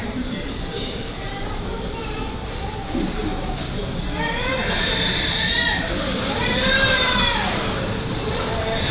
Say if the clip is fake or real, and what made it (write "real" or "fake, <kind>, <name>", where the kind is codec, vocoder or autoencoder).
fake, vocoder, BigVGAN v2